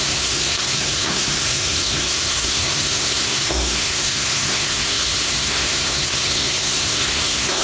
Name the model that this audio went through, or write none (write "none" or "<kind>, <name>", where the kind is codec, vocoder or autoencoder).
codec, SNAC